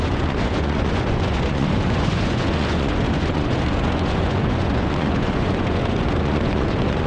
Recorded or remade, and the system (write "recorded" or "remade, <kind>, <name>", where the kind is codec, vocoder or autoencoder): remade, vocoder, Vocos